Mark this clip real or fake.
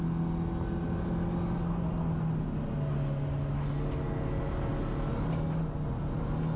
real